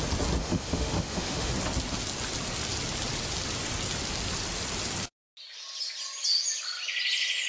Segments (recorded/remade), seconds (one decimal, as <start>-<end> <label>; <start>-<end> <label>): 0.0-0.4 recorded; 0.4-1.5 remade; 1.5-7.5 recorded